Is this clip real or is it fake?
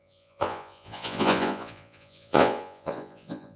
fake